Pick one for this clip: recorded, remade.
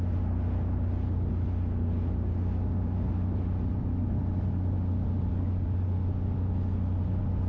recorded